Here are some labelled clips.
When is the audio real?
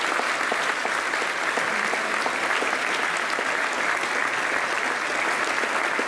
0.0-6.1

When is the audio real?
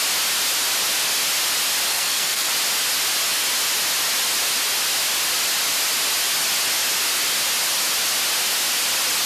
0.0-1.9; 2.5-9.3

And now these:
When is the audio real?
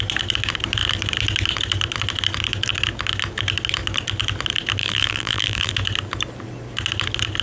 0.0-4.8; 5.7-7.4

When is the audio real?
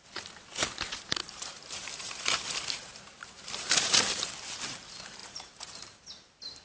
0.0-1.2; 4.3-5.2; 6.0-6.6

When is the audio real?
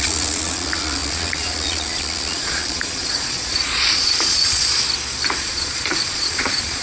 4.7-5.4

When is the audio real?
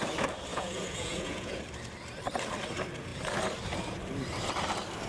0.0-0.5; 1.6-5.1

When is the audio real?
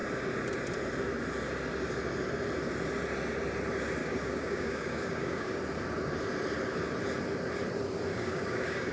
0.0-4.0; 5.6-8.1